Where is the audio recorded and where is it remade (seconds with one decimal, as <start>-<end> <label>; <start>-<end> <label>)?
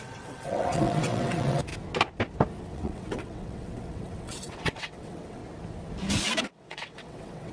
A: 0.0-1.7 remade; 1.7-2.6 recorded; 2.6-5.4 remade; 5.4-6.5 recorded; 6.5-7.5 remade